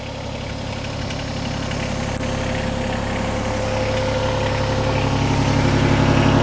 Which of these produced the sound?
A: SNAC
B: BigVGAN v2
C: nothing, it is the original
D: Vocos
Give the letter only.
C